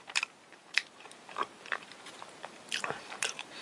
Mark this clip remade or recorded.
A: remade